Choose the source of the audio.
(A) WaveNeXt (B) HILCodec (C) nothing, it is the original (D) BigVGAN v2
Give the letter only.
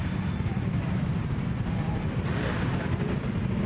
D